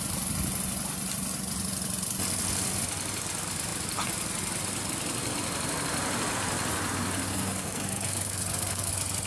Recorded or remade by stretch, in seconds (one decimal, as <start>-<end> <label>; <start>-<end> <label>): 0.0-7.3 recorded; 7.3-8.9 remade; 8.9-9.3 recorded